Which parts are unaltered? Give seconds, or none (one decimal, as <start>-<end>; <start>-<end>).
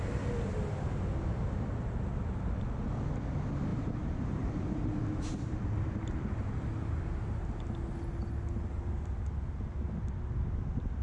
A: 0.0-3.7; 6.5-11.0